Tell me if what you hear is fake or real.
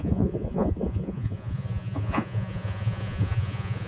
fake